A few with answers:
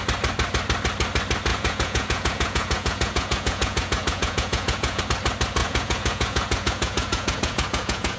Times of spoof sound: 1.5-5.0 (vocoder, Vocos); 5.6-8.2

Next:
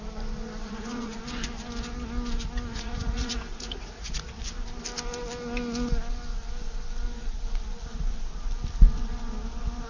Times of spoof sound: 0.6-1.2 (vocoder, Vocos); 2.7-4.2

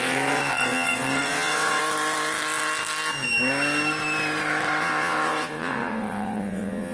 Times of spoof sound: 0.0-1.8 (vocoder, WaveNeXt); 4.8-6.9

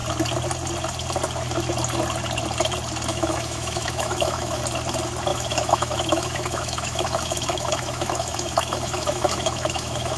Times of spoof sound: 3.1-4.6 (autoencoder, DAC-VAE); 5.3-10.2

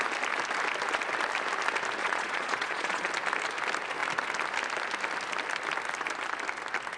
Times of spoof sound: 2.0-3.1 (vocoder, Vocos)